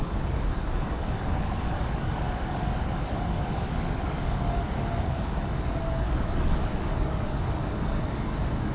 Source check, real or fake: fake